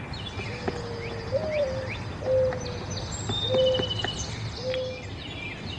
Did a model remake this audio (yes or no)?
no